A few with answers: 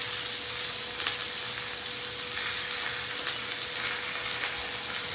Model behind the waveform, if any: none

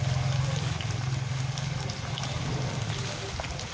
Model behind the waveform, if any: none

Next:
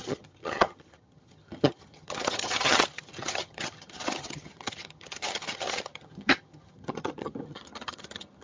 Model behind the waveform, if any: vocoder, HiFi-GAN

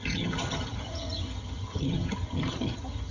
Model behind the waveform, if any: vocoder, HiFi-GAN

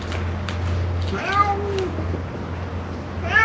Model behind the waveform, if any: none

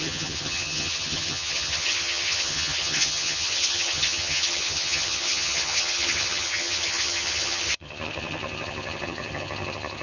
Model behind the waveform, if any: vocoder, HiFi-GAN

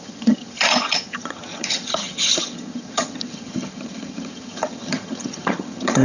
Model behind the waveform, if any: vocoder, HiFi-GAN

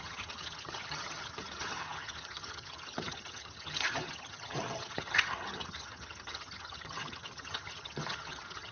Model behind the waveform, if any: vocoder, HiFi-GAN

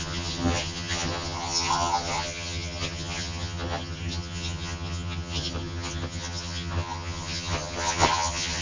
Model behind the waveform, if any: vocoder, HiFi-GAN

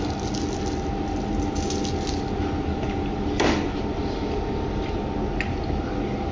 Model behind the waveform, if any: none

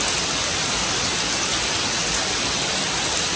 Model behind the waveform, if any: none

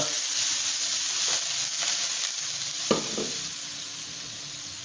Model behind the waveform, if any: none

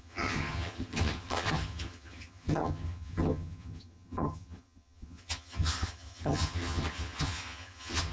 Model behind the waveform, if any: vocoder, HiFi-GAN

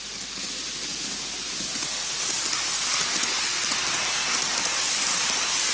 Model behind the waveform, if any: none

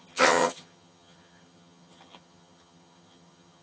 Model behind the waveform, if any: vocoder, HiFi-GAN